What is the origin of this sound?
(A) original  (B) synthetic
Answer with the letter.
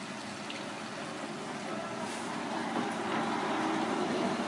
A